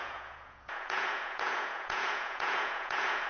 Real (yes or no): no